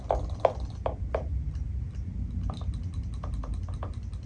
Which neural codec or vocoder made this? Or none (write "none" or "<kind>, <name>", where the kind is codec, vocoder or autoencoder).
none